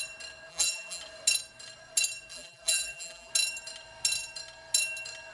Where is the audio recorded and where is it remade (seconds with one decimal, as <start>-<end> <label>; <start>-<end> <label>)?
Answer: 0.0-0.5 recorded; 0.5-1.0 remade; 1.0-2.3 recorded; 2.3-3.3 remade; 3.3-5.3 recorded